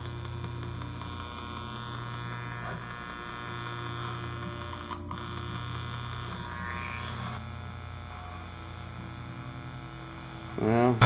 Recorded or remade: recorded